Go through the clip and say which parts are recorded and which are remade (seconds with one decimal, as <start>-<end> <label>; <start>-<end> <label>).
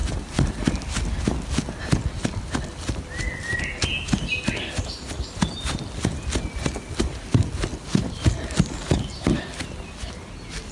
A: 0.0-10.7 recorded